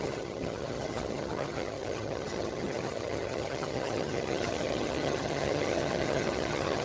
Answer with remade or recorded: remade